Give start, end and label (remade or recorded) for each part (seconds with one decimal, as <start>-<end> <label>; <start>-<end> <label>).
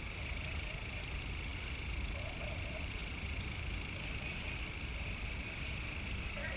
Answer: 0.0-6.6 recorded